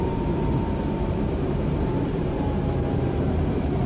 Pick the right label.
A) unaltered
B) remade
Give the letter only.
B